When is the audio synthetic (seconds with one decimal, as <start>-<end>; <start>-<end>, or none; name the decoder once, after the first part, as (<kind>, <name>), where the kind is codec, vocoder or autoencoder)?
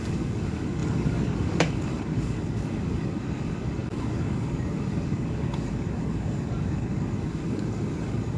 0.0-8.4 (codec, DAC)